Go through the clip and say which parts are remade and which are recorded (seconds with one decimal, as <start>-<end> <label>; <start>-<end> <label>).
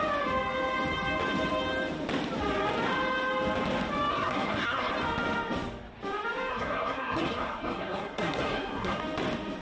0.0-4.1 recorded; 4.1-4.9 remade; 4.9-6.5 recorded; 6.5-9.0 remade; 9.0-9.6 recorded